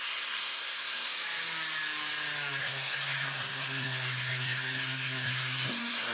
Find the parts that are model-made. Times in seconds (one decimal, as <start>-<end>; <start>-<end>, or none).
0.0-1.1; 2.6-6.1